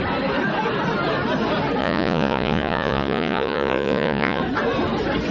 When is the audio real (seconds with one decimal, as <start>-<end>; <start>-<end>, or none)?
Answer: 0.0-1.8; 4.4-5.3